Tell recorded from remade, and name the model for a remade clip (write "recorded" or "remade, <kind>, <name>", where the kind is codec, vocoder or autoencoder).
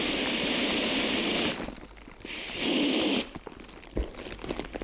recorded